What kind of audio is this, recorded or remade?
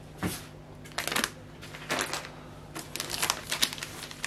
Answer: recorded